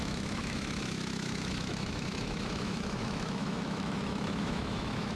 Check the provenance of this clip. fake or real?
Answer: fake